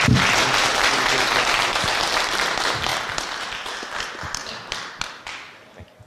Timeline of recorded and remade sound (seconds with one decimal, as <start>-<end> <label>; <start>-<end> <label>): 0.0-6.1 recorded